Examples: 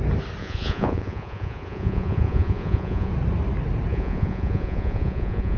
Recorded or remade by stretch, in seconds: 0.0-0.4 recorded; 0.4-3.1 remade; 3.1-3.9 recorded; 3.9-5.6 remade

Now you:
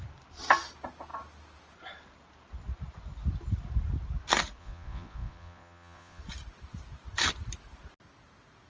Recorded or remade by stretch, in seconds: 0.0-4.6 recorded; 4.6-6.2 remade; 6.2-8.7 recorded

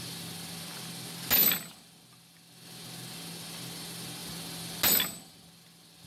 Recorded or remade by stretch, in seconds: 0.0-6.1 recorded

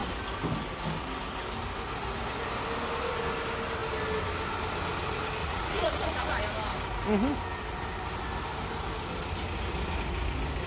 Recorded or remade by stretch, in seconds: 0.0-5.4 recorded; 5.4-6.4 remade; 6.4-10.7 recorded